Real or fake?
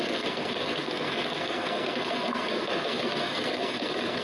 fake